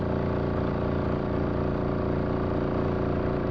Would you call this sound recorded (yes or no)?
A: yes